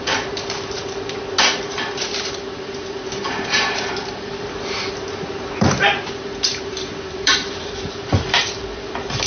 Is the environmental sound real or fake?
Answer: fake